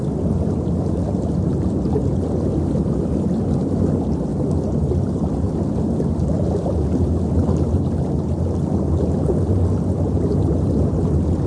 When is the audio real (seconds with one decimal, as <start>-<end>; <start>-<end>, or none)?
0.0-11.5